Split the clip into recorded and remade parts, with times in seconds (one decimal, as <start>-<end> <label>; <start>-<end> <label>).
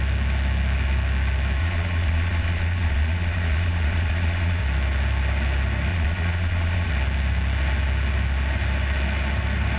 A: 0.0-1.6 recorded; 1.6-4.6 remade; 4.6-5.9 recorded; 5.9-6.9 remade; 6.9-9.8 recorded